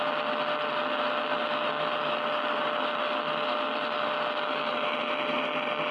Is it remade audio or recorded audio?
recorded